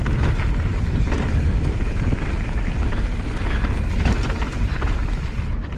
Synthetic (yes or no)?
no